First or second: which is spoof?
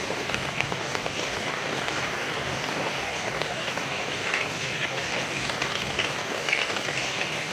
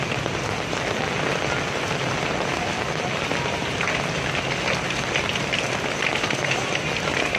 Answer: first